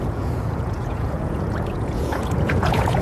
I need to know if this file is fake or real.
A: fake